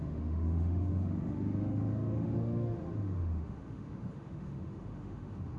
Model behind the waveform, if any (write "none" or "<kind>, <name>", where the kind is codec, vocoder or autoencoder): autoencoder, DAC-VAE